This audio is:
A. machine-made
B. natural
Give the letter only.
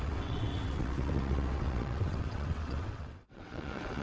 A